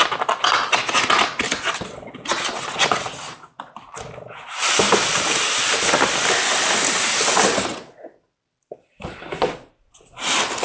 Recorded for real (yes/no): yes